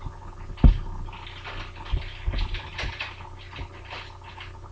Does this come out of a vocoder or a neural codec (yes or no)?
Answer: no